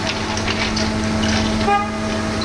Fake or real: real